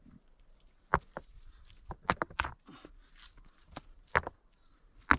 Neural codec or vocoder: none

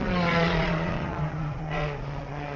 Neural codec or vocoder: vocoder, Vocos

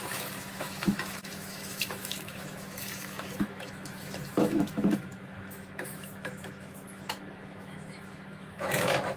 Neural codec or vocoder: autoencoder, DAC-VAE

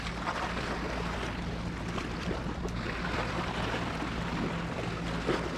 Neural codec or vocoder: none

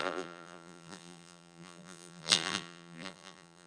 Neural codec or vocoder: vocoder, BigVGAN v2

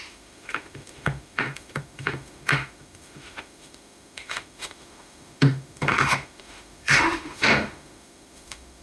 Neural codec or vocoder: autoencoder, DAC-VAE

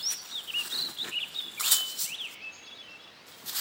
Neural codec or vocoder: none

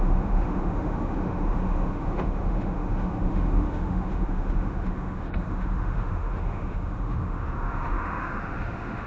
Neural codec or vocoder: autoencoder, DAC-VAE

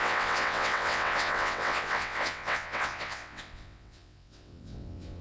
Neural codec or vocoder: vocoder, WaveNeXt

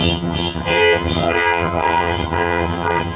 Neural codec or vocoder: vocoder, HiFi-GAN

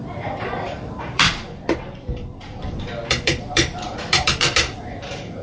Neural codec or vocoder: vocoder, BigVGAN v2